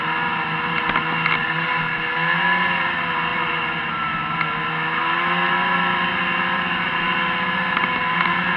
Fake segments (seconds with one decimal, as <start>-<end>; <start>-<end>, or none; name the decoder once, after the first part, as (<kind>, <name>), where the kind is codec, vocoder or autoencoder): 3.3-3.9 (vocoder, BigVGAN v2)